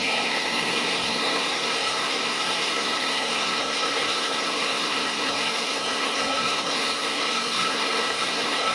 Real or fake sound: fake